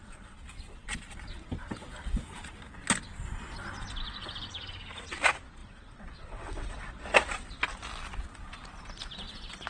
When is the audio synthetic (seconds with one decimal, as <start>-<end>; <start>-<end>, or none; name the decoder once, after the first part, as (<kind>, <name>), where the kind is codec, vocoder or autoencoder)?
5.6-6.9 (vocoder, WaveNeXt)